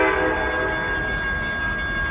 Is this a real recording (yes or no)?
yes